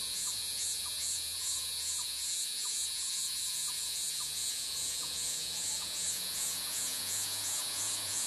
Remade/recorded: remade